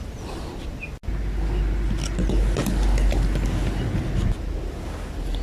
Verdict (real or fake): real